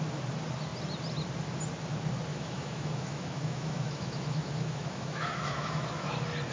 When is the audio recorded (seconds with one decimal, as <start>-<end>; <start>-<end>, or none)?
0.0-2.3; 6.1-6.5